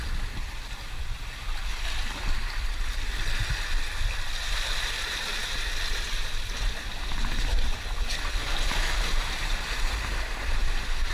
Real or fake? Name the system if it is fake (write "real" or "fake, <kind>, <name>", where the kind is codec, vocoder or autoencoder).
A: real